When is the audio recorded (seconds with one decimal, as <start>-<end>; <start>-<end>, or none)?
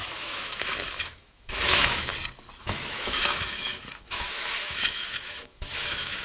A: 2.1-2.6